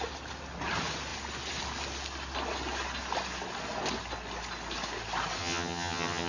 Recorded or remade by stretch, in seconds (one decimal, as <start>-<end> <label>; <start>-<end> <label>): 0.0-5.4 recorded; 5.4-6.3 remade